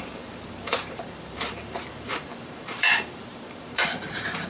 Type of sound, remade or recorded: remade